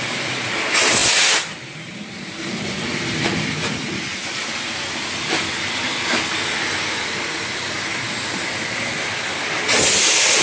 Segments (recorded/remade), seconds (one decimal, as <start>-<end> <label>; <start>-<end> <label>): 0.0-10.4 recorded